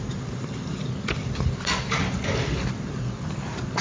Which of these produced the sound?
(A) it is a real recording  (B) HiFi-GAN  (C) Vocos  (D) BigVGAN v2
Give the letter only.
A